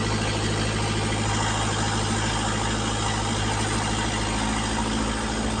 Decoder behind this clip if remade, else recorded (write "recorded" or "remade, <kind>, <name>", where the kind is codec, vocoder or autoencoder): recorded